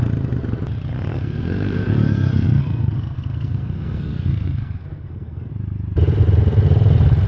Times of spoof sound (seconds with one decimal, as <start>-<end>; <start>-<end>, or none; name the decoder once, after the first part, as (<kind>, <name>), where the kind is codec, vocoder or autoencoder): 1.1-5.5 (codec, SNAC)